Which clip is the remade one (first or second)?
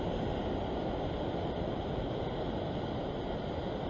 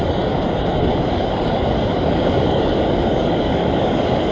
second